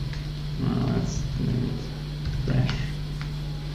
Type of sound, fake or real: real